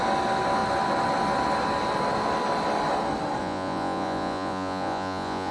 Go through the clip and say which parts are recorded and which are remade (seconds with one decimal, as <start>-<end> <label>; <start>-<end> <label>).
0.0-3.4 recorded; 3.4-5.5 remade